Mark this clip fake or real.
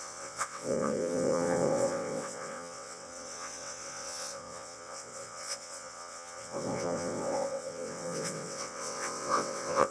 fake